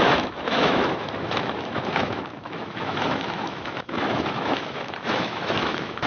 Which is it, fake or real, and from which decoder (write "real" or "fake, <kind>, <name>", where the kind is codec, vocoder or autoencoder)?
fake, autoencoder, DAC-VAE